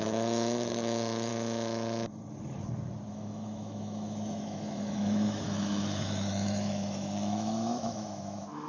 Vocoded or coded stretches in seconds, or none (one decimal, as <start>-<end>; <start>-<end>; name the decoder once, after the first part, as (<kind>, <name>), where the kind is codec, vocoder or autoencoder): 0.0-1.3 (autoencoder, DAC-VAE); 3.1-8.7